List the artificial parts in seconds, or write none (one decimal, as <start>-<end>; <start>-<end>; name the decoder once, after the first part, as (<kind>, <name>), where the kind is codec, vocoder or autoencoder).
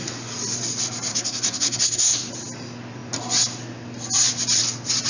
1.1-2.3 (codec, SNAC)